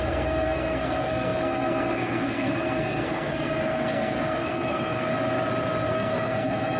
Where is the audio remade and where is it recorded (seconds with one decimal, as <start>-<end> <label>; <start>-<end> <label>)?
0.0-5.1 remade; 5.1-5.9 recorded; 5.9-6.8 remade